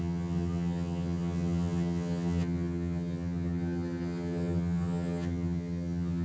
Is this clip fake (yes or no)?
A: yes